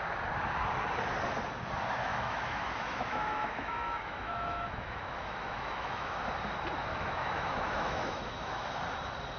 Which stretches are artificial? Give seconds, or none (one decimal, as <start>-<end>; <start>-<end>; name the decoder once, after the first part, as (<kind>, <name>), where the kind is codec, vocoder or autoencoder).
2.1-6.2 (autoencoder, DAC-VAE); 6.9-8.8